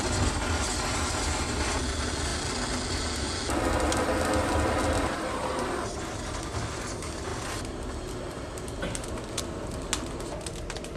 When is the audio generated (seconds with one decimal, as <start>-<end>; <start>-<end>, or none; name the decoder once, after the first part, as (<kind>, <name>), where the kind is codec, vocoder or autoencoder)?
none